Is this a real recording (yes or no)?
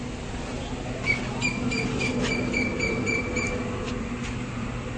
yes